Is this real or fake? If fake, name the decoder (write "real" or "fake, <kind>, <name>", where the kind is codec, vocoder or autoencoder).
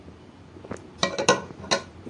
real